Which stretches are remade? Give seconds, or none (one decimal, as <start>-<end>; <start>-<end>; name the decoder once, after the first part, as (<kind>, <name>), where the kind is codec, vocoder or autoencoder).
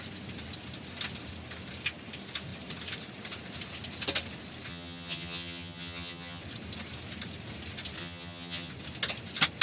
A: 4.7-6.4 (vocoder, HiFi-GAN); 8.0-8.7